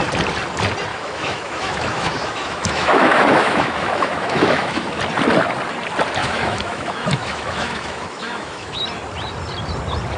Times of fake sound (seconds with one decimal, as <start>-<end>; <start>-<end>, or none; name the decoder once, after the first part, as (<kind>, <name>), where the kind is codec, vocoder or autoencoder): 0.9-5.0 (autoencoder, DAC-VAE); 6.2-8.8